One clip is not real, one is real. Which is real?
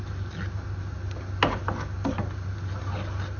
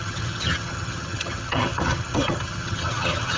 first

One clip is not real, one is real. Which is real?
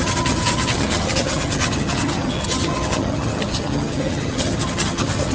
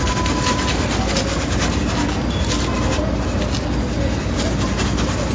second